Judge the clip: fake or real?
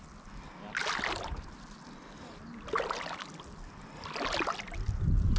real